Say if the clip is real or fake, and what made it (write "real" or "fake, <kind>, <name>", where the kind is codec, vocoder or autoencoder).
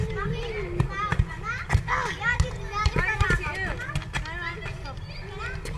real